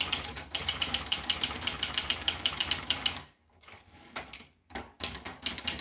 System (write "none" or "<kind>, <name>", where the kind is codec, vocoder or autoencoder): codec, DAC